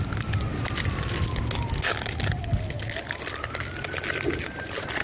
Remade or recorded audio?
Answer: recorded